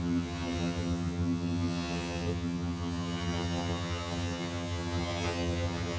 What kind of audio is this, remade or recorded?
remade